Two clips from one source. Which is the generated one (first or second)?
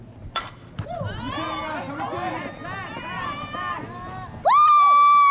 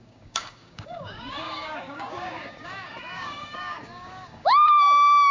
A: second